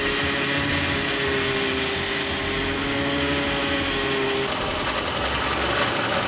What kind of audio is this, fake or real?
real